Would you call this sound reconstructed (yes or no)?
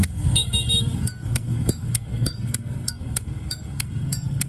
yes